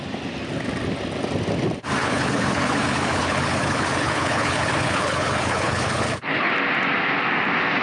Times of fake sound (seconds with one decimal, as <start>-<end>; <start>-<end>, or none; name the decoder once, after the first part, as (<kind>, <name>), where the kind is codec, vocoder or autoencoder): 2.0-6.5 (codec, HILCodec)